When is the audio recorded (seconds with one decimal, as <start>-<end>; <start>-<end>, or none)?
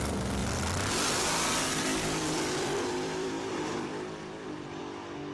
0.0-1.6; 4.8-5.3